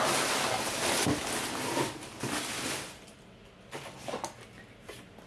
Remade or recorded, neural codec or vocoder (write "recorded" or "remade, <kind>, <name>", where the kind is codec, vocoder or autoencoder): recorded